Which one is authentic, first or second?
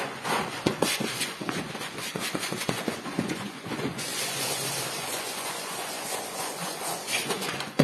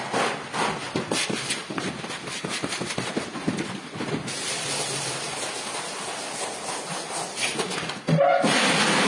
second